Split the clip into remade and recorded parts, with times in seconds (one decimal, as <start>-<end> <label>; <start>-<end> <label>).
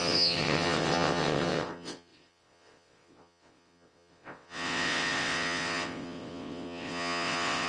0.0-7.7 remade